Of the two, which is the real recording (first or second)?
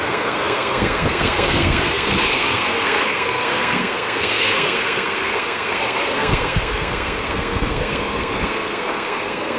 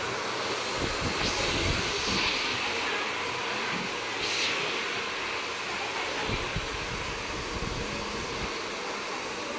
second